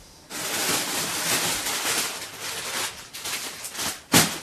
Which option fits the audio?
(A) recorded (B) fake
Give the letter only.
A